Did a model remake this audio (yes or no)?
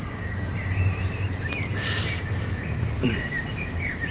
yes